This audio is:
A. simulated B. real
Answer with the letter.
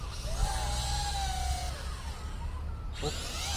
B